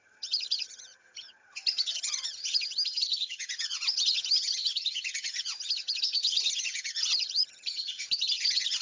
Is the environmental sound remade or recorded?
remade